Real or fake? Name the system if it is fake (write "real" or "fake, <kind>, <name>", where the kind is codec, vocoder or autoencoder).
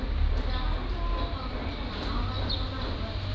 real